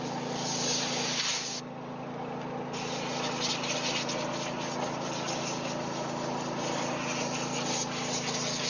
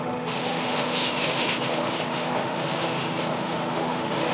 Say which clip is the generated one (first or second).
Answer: second